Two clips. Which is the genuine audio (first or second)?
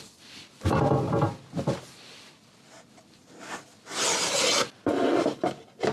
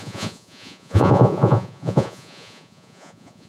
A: first